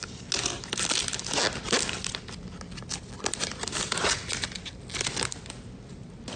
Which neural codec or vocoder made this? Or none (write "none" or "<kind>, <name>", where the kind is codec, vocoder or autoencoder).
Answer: none